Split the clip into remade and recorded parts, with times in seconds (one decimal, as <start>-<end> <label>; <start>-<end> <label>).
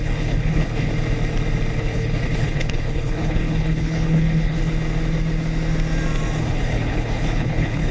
0.0-0.9 remade; 0.9-1.8 recorded; 1.8-4.6 remade; 4.6-6.4 recorded; 6.4-7.9 remade